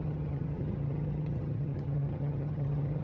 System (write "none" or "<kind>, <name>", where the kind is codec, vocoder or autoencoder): vocoder, HiFi-GAN